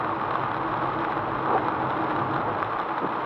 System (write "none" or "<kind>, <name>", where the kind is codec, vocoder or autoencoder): none